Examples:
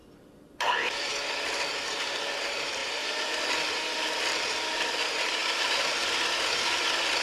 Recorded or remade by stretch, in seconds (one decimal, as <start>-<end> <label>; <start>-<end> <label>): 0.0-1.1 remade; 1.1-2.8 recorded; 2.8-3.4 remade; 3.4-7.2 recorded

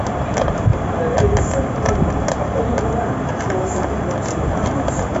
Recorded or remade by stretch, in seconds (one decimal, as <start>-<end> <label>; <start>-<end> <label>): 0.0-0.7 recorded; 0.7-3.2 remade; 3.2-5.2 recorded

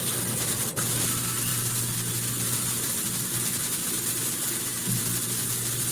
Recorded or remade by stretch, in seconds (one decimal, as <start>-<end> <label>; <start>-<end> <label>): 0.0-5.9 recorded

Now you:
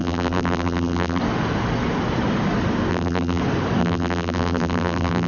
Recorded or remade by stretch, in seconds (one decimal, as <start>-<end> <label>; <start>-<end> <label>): 0.0-1.2 remade; 1.2-2.9 recorded; 2.9-3.4 remade; 3.4-3.8 recorded; 3.8-5.3 remade

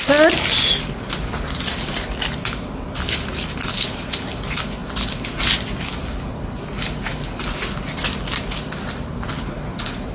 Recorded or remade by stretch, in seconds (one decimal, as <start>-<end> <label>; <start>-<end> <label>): 0.0-10.1 recorded

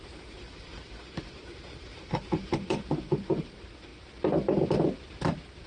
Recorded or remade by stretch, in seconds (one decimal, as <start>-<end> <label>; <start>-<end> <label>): 0.0-3.9 remade; 3.9-5.1 recorded; 5.1-5.7 remade